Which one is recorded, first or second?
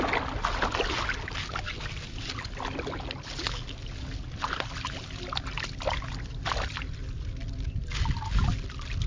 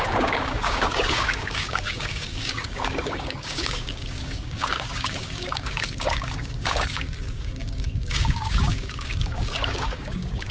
first